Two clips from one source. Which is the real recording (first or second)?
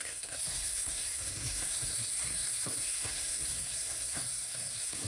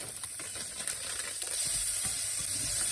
second